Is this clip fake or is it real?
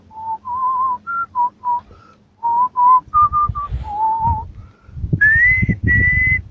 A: real